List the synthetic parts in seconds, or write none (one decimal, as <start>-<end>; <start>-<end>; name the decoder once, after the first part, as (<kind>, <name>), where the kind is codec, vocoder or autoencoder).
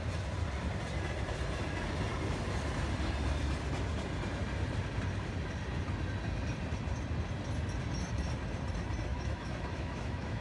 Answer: 9.1-10.4 (autoencoder, DAC-VAE)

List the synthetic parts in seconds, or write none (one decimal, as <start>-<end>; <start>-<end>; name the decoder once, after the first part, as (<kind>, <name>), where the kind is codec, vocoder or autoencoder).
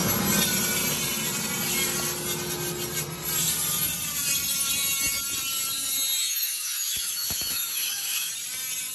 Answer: 6.2-8.3 (autoencoder, DAC-VAE)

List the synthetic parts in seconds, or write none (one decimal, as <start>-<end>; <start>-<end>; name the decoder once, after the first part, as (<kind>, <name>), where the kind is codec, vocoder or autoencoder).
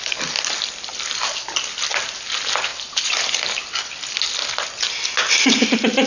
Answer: 2.7-3.6 (vocoder, BigVGAN v2)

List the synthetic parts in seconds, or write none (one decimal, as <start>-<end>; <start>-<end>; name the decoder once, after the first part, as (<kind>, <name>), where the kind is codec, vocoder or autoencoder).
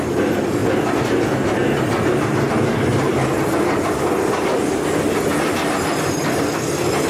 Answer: none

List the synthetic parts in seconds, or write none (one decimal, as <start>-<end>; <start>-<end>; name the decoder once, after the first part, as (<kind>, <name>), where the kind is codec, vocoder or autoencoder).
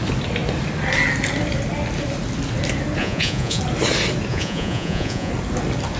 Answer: 3.0-3.6 (vocoder, Vocos); 4.3-5.3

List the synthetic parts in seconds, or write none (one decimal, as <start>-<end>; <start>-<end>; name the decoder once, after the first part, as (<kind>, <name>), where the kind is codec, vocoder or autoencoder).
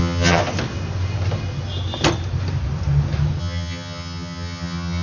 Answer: 0.0-0.4 (vocoder, HiFi-GAN); 3.4-5.0